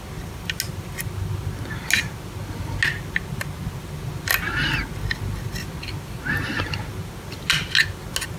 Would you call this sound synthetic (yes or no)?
no